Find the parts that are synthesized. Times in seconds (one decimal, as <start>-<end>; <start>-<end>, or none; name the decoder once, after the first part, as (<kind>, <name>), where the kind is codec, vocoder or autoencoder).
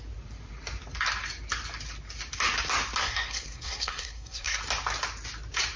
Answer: 3.0-4.6 (codec, SNAC)